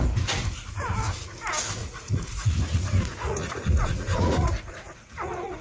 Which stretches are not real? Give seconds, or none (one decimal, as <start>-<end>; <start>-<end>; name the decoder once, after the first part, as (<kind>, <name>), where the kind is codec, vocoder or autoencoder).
1.8-5.6 (vocoder, Vocos)